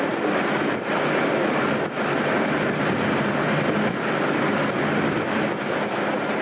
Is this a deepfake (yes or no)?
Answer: no